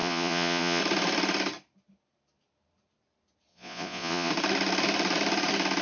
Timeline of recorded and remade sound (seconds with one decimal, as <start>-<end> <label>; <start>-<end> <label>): 0.0-0.8 remade; 0.8-3.5 recorded; 3.5-4.3 remade; 4.3-5.8 recorded